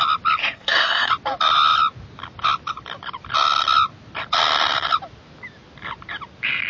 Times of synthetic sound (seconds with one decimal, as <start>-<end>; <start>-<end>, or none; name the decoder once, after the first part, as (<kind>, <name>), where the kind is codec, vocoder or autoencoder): 0.4-1.1 (codec, SNAC)